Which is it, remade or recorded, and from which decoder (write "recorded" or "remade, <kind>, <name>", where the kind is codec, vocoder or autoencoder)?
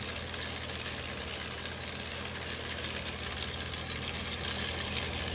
recorded